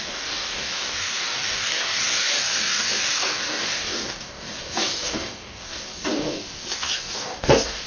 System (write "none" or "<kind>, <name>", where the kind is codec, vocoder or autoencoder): codec, DAC